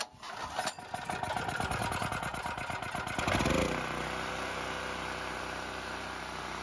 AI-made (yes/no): no